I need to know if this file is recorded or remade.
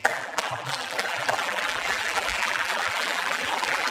remade